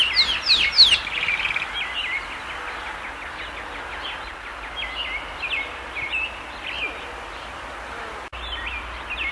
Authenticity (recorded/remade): recorded